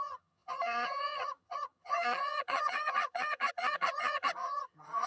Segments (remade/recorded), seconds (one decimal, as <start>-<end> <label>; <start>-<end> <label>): 0.0-5.1 remade